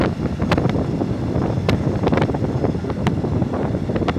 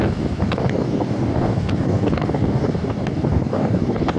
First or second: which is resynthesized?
second